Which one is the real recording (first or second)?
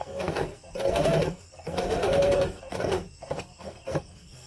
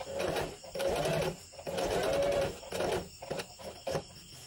second